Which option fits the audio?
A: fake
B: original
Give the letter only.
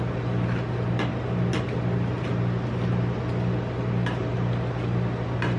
B